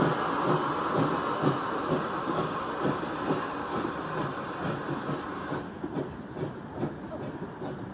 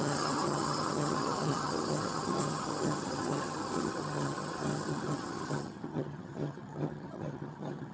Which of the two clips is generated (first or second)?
second